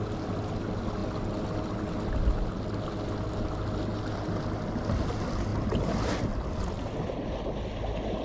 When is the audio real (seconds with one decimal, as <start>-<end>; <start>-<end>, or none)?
0.0-8.2